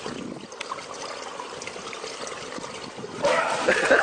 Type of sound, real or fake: real